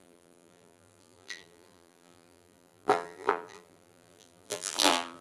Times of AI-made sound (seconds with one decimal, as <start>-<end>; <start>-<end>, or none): 0.0-5.2